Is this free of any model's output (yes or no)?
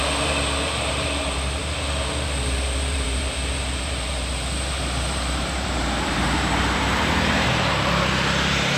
no